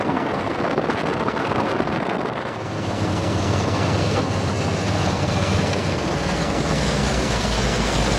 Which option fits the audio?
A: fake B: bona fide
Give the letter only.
A